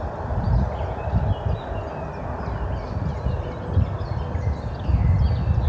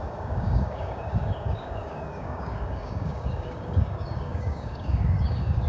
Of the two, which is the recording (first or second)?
first